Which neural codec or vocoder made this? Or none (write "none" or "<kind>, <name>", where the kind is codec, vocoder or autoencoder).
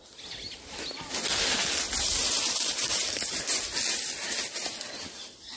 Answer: none